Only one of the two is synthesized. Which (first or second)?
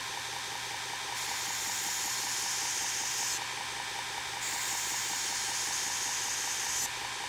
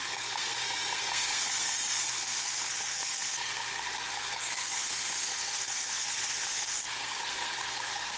second